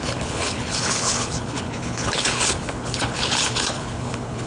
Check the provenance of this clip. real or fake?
fake